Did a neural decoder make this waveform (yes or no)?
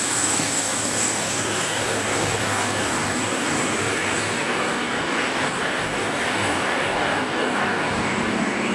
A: yes